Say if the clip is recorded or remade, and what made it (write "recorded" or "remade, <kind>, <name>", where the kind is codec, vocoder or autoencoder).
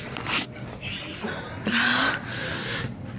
recorded